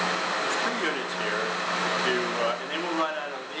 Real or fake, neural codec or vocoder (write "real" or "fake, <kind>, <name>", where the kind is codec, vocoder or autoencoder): real